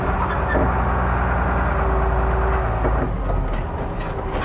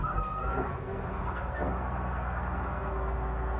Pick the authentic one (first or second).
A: first